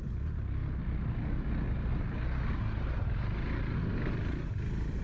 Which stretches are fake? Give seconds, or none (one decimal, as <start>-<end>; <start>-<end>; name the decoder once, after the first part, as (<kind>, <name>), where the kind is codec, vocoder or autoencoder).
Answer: none